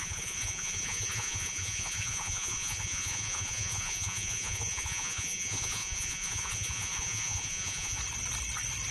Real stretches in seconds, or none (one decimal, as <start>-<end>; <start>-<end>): 8.0-8.9